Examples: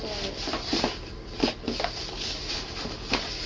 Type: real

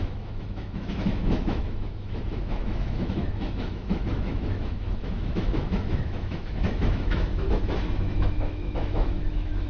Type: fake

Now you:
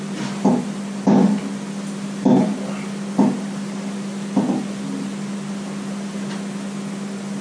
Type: real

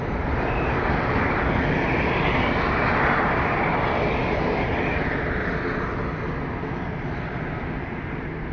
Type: real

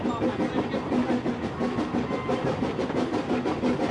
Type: real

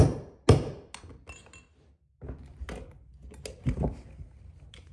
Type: real